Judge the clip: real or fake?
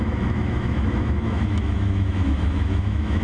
fake